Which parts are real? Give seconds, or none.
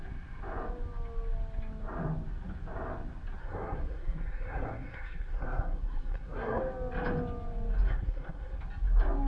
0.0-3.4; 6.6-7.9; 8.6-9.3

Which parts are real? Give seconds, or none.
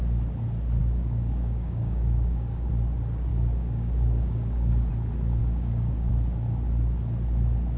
0.0-0.8; 2.7-3.3; 4.9-5.4; 6.1-7.8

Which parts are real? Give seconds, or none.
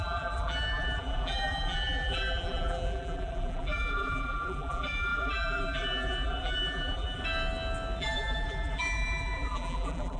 7.2-8.0